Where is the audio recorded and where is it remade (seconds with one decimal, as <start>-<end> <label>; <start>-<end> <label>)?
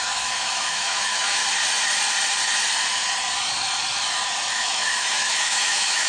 0.0-1.4 remade; 1.4-4.5 recorded; 4.5-6.1 remade